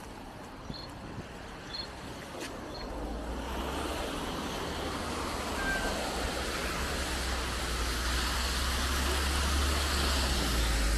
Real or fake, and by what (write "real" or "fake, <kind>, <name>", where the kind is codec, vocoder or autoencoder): real